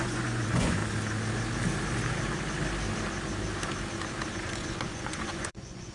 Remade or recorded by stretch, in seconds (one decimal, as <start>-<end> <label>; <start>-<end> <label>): 0.0-0.8 remade; 0.8-4.3 recorded; 4.3-5.9 remade